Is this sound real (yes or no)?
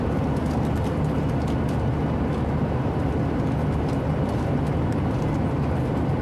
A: yes